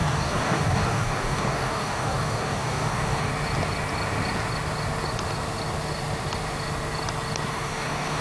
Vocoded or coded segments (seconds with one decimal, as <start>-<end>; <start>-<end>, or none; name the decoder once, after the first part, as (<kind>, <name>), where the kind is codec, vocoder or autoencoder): 0.0-3.3 (codec, DAC); 7.5-8.2